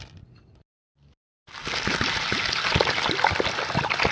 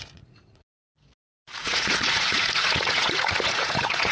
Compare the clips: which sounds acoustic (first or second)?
first